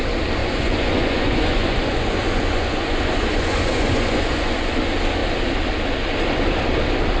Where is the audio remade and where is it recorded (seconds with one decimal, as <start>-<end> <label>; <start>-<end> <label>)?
0.0-0.4 recorded; 0.4-4.7 remade; 4.7-7.2 recorded